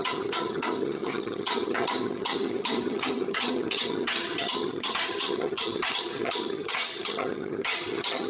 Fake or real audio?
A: fake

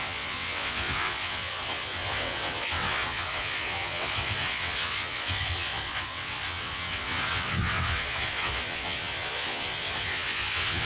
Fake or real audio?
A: fake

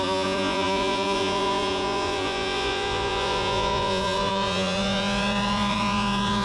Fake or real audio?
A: fake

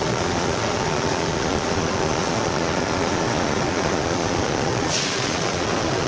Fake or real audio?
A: fake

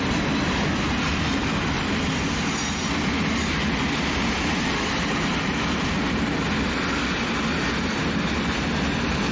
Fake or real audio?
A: real